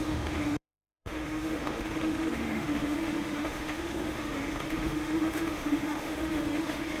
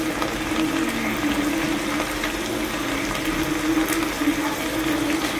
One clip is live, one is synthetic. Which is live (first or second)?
second